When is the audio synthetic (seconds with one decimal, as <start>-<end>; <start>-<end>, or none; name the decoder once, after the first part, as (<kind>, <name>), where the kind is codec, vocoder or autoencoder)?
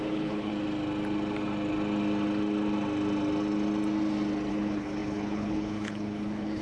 0.0-0.5 (codec, HILCodec); 4.5-6.6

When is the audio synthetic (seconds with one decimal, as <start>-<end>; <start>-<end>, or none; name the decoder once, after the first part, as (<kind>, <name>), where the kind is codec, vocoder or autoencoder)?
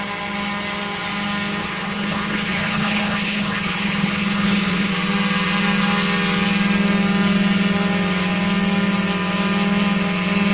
1.6-4.9 (codec, HILCodec)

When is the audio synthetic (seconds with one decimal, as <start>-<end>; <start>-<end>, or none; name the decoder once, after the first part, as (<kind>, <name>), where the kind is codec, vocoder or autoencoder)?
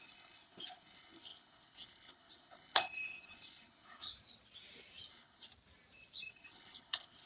0.0-4.1 (codec, HILCodec); 5.1-5.5; 6.3-7.3